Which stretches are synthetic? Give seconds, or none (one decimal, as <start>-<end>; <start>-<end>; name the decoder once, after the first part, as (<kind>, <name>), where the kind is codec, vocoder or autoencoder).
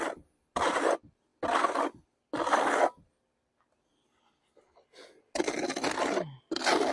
none